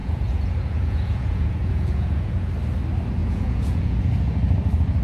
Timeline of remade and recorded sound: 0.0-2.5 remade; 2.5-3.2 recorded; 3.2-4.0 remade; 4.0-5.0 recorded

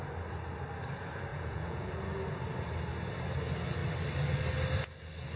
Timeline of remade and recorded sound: 0.0-1.3 recorded; 1.3-1.9 remade; 1.9-5.4 recorded

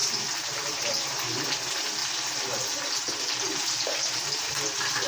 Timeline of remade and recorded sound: 0.0-5.1 recorded

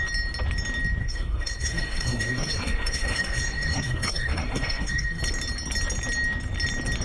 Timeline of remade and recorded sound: 0.0-1.0 recorded; 1.0-5.2 remade; 5.2-7.0 recorded

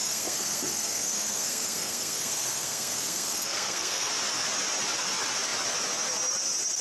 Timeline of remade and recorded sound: 0.0-4.1 remade; 4.1-6.8 recorded